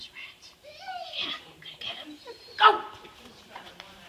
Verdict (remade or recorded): remade